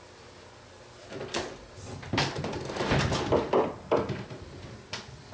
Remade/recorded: recorded